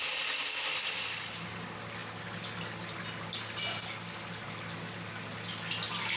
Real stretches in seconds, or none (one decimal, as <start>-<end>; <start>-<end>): 0.0-6.2